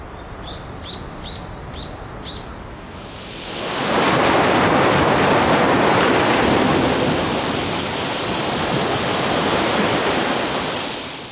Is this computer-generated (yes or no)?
no